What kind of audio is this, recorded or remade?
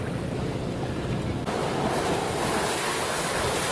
recorded